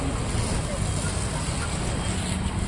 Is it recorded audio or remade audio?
recorded